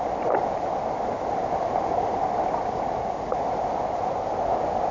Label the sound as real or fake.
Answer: real